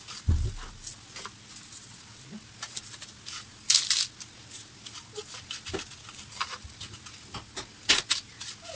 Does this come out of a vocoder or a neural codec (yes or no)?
no